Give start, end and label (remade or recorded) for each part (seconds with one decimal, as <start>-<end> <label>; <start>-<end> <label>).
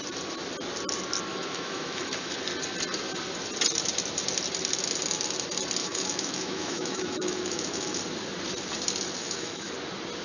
0.0-1.3 recorded; 1.3-2.3 remade; 2.3-5.8 recorded; 5.8-8.0 remade; 8.0-9.2 recorded; 9.2-9.7 remade; 9.7-10.2 recorded